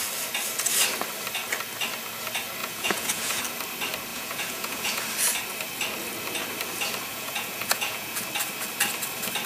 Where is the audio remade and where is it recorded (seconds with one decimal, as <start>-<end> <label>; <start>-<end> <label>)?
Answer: 0.0-2.6 recorded; 2.6-3.4 remade; 3.4-4.1 recorded; 4.1-5.0 remade; 5.0-7.1 recorded; 7.1-8.2 remade; 8.2-9.5 recorded